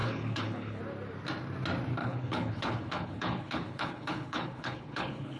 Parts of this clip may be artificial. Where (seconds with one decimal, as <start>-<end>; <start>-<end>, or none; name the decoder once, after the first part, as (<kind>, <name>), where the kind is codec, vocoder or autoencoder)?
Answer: 0.0-0.8 (codec, HILCodec); 2.0-5.4

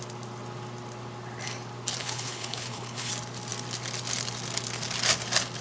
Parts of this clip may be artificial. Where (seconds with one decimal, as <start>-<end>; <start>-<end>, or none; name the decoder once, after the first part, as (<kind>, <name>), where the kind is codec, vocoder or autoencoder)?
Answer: 2.0-3.1 (codec, HILCodec)

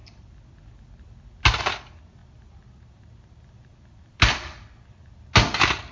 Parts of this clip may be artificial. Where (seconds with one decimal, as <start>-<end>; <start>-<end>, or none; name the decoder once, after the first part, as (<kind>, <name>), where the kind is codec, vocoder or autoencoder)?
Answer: none

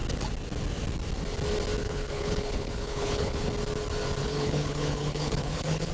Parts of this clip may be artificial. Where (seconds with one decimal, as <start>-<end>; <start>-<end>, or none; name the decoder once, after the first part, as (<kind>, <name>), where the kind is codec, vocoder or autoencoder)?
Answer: 1.8-3.5 (codec, HILCodec); 4.2-5.9